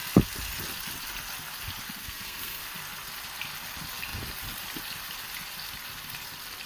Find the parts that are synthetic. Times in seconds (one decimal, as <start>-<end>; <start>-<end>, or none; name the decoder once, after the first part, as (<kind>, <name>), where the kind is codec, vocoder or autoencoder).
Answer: 2.0-2.6 (codec, SNAC)